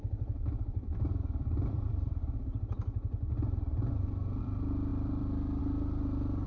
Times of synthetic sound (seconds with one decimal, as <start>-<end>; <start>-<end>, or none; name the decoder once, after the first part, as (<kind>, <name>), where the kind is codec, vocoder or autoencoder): 0.0-2.2 (vocoder, BigVGAN v2); 4.4-6.5